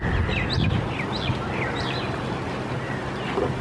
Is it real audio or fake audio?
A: real